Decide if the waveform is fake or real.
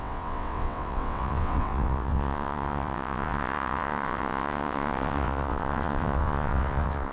fake